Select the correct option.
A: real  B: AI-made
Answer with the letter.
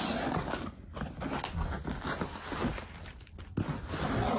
A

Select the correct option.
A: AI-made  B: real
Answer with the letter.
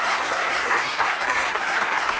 A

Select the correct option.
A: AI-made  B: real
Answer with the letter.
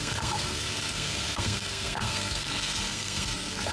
A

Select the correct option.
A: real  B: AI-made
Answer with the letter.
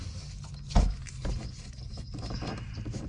A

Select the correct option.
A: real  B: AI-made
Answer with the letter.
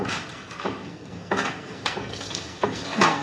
B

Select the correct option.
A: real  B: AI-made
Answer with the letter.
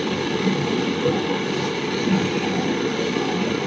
A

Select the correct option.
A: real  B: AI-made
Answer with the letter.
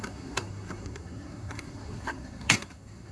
B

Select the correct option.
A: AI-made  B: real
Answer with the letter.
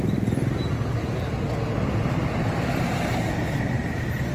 B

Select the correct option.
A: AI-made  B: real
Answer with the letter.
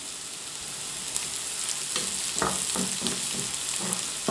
B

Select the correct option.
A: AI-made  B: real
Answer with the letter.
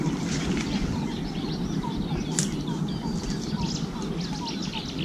B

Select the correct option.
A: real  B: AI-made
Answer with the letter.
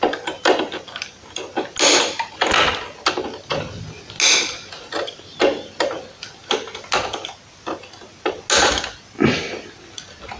A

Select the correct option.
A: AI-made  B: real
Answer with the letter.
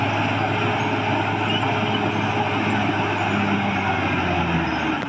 B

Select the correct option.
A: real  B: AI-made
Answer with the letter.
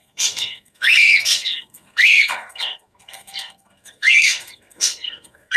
B